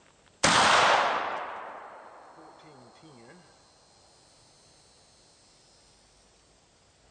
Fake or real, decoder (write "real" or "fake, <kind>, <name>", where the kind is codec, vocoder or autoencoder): real